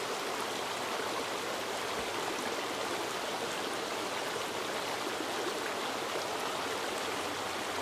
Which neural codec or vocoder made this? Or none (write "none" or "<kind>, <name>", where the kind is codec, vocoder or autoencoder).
none